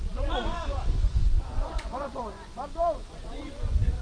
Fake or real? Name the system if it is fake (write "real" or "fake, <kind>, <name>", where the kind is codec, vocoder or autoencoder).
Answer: fake, vocoder, Vocos